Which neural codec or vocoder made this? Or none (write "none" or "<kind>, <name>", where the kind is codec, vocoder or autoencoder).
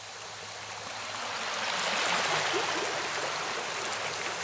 none